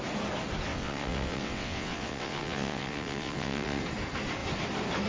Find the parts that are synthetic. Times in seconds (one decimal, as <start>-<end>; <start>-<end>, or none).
0.7-3.8